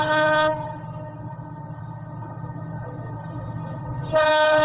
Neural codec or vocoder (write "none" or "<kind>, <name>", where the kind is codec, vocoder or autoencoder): codec, HILCodec